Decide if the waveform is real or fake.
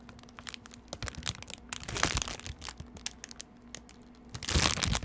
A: real